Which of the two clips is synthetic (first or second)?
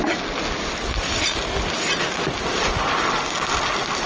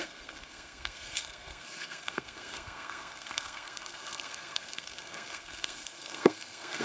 second